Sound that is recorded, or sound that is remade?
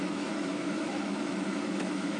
remade